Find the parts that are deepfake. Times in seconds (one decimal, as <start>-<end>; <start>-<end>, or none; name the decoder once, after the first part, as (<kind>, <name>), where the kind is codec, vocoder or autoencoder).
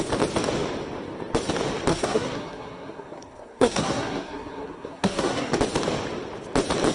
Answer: 1.9-5.5 (codec, SNAC)